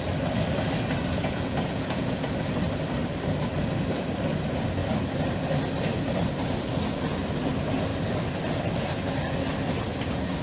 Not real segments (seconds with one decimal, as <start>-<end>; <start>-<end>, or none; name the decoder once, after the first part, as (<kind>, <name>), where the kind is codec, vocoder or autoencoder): 1.2-2.3 (vocoder, Vocos)